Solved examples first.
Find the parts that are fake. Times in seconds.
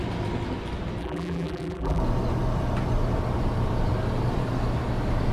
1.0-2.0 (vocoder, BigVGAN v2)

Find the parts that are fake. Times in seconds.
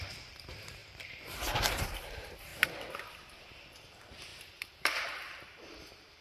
0.0-2.5 (vocoder, BigVGAN v2); 3.0-6.2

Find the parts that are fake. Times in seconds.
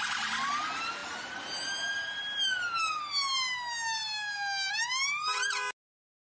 none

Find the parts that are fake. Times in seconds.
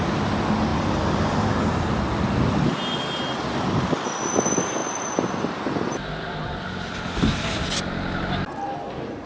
none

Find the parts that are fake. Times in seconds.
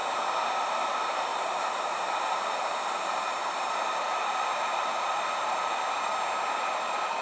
0.6-6.1 (vocoder, BigVGAN v2); 6.6-7.2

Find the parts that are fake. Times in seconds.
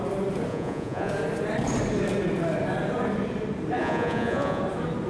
0.5-1.1 (vocoder, Vocos); 3.8-4.6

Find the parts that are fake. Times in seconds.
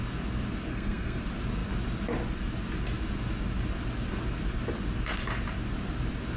0.7-1.2 (codec, SNAC)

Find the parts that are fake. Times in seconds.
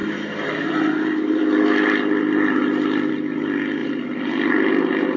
0.0-3.1 (vocoder, BigVGAN v2); 3.8-4.5